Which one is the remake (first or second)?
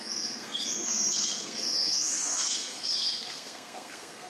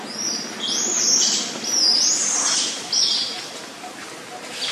first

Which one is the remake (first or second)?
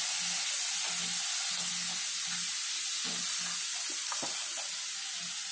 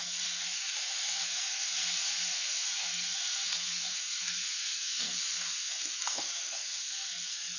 second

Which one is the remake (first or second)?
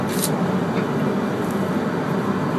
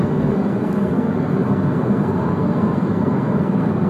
second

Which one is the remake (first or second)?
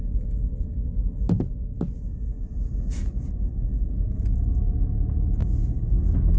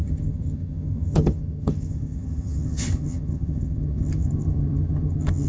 second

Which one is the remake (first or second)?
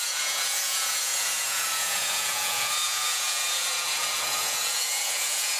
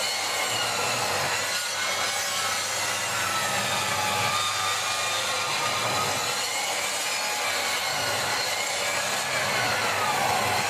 first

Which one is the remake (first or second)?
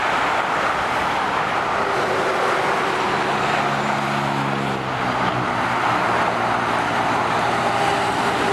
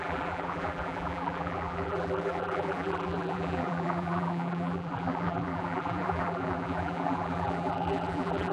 second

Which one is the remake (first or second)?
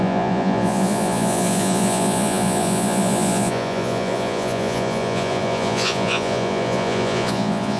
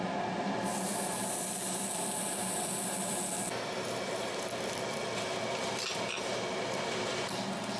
first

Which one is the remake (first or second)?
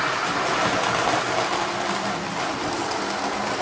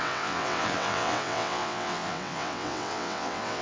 second